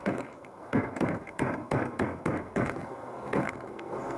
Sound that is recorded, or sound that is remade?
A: remade